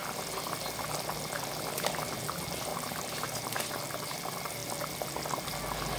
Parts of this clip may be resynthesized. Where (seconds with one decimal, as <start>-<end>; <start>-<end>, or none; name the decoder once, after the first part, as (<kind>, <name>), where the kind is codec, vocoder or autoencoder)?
2.7-3.8 (vocoder, BigVGAN v2)